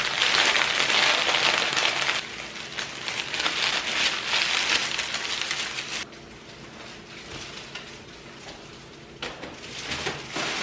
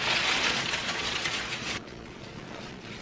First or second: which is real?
first